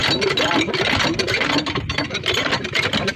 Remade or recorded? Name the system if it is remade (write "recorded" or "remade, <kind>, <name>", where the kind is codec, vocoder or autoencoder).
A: remade, vocoder, BigVGAN v2